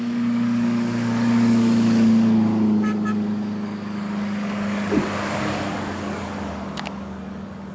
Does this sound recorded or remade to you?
remade